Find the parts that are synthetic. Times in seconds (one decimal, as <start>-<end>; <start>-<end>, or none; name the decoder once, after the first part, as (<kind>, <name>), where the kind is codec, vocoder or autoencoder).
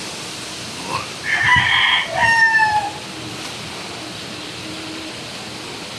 none